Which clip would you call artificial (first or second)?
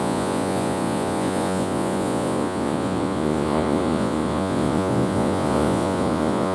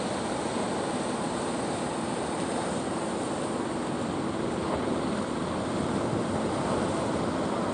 first